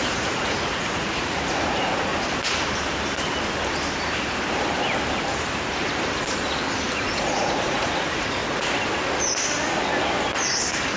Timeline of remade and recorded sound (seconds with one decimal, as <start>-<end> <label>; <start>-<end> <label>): 0.0-2.1 remade; 2.1-7.0 recorded; 7.0-8.4 remade; 8.4-11.0 recorded